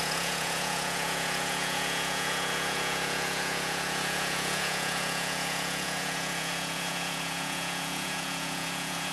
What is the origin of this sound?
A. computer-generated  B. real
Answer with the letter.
A